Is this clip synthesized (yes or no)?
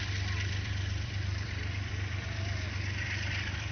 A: yes